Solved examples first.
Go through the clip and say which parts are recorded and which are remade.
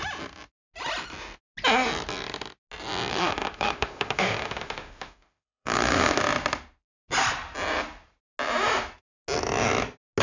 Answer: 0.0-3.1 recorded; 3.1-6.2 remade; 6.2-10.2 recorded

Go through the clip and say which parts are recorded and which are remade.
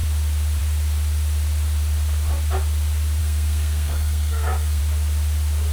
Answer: 0.0-3.2 recorded; 3.2-4.8 remade; 4.8-5.7 recorded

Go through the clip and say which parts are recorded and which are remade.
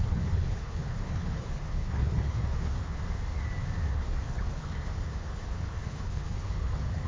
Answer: 0.0-3.0 remade; 3.0-3.9 recorded; 3.9-7.1 remade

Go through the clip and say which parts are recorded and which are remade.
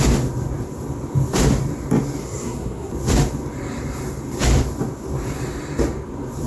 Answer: 0.0-2.2 recorded; 2.2-2.9 remade; 2.9-6.5 recorded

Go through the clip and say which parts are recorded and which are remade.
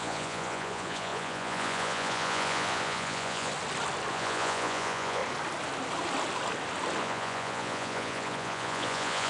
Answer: 0.0-3.5 remade; 3.5-4.1 recorded; 4.1-5.2 remade; 5.2-7.0 recorded; 7.0-9.3 remade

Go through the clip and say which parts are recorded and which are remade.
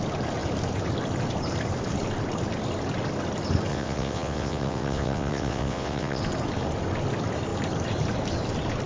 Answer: 0.0-3.7 recorded; 3.7-6.2 remade; 6.2-8.9 recorded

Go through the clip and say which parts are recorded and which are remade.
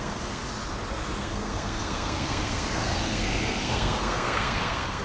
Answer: 0.0-0.4 remade; 0.4-1.2 recorded; 1.2-5.0 remade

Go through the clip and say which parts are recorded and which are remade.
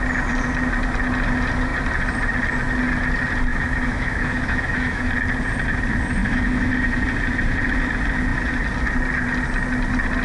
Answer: 0.0-3.5 recorded; 3.5-5.1 remade; 5.1-6.2 recorded; 6.2-6.7 remade; 6.7-10.2 recorded